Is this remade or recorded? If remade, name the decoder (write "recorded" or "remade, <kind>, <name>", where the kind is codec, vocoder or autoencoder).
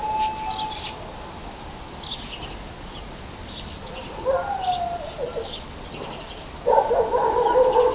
recorded